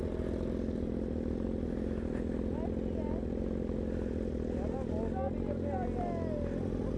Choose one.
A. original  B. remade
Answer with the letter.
A